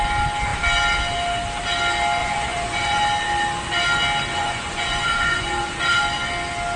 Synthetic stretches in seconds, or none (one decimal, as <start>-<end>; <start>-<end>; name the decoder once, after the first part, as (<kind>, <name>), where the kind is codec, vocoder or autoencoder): 2.2-3.0 (vocoder, Vocos); 4.3-6.0